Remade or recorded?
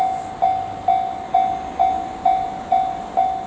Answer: recorded